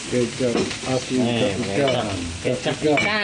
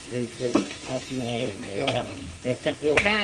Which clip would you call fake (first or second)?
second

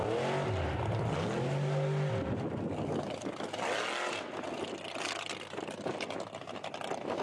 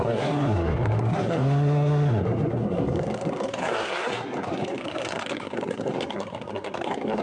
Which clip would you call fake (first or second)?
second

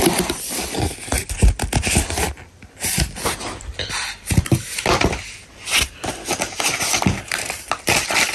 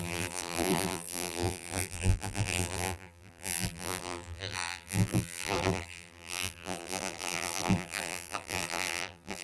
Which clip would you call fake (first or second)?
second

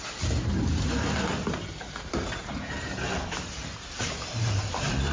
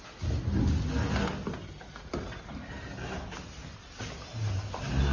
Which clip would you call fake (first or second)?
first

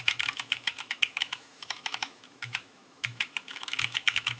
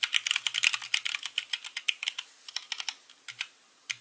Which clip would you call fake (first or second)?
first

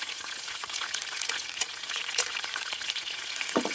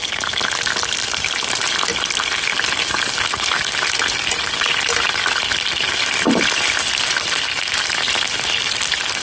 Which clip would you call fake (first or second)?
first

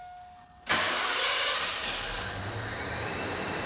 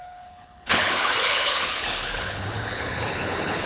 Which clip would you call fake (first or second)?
second